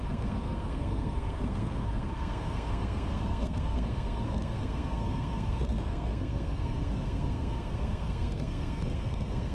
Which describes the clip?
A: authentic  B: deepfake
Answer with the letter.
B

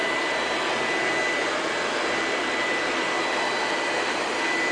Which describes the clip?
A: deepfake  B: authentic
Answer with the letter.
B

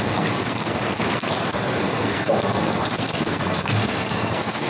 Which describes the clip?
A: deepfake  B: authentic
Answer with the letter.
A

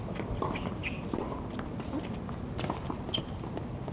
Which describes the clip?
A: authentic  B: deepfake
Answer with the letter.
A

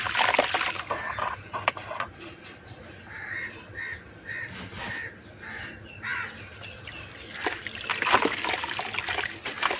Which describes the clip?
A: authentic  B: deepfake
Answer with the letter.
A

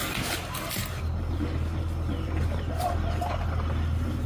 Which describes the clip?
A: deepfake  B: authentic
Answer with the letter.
B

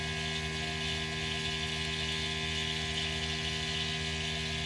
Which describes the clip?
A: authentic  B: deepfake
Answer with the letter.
A